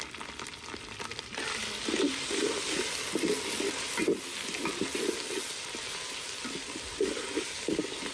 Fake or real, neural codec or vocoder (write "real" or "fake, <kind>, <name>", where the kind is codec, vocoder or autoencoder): real